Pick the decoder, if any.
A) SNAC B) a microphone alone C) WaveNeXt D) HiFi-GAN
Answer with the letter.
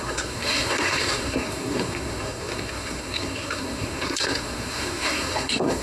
A